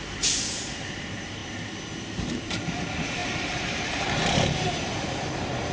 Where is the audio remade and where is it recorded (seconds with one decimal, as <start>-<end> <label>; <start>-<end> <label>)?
0.0-1.4 remade; 1.4-1.9 recorded; 1.9-5.7 remade